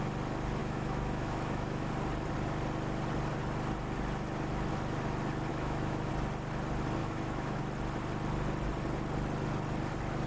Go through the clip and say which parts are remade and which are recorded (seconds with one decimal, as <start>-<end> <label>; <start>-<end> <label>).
0.0-0.6 recorded; 0.6-1.9 remade; 1.9-5.5 recorded; 5.5-6.1 remade; 6.1-7.0 recorded; 7.0-7.6 remade; 7.6-10.3 recorded